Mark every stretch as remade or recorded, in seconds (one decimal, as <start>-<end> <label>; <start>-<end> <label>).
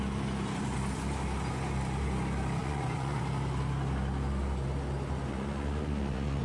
0.0-2.6 recorded; 2.6-3.2 remade; 3.2-5.3 recorded; 5.3-6.4 remade